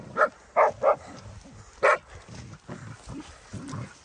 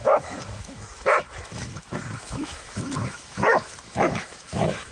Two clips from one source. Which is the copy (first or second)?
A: second